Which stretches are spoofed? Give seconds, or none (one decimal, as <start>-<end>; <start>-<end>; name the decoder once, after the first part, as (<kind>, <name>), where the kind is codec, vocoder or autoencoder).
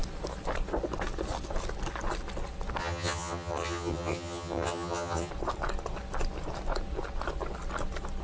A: 2.8-5.3 (vocoder, HiFi-GAN)